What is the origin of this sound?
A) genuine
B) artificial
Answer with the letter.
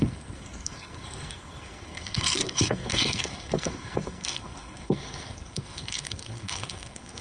B